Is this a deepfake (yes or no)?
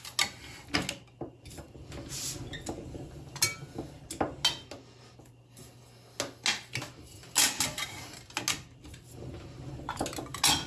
no